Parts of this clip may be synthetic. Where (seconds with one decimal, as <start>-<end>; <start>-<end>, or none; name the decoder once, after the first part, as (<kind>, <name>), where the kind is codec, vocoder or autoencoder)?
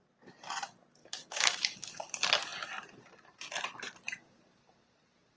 1.0-1.9 (codec, DAC)